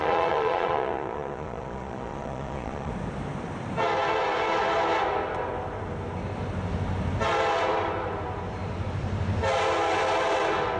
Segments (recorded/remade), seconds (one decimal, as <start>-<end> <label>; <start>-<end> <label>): 0.0-2.9 remade; 2.9-10.8 recorded